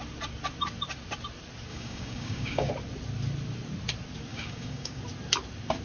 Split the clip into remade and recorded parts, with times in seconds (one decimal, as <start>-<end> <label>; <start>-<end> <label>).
0.0-1.7 recorded; 1.7-2.7 remade; 2.7-4.3 recorded; 4.3-5.0 remade; 5.0-5.8 recorded